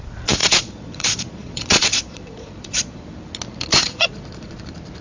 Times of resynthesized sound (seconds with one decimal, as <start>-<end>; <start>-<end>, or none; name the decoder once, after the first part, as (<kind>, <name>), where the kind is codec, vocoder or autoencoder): 0.4-3.0 (vocoder, Vocos); 3.7-4.6